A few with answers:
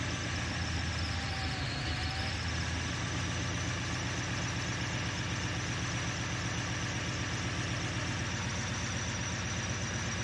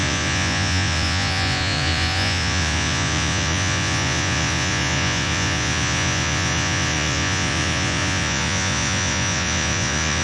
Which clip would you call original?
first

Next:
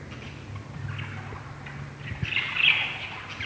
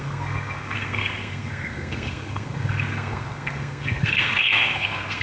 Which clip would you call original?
first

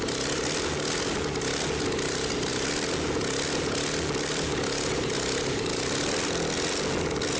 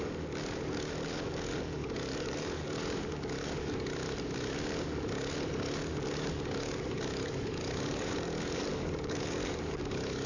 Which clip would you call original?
first